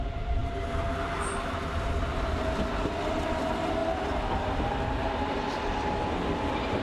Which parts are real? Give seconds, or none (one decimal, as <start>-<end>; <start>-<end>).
0.0-6.8